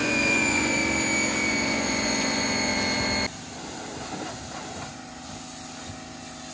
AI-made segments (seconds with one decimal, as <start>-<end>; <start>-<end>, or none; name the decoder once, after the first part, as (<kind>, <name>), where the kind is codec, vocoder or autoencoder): 0.0-0.8 (vocoder, Vocos); 1.5-2.7